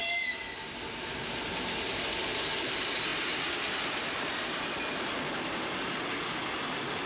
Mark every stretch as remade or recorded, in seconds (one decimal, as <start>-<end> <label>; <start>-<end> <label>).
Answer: 0.0-7.1 recorded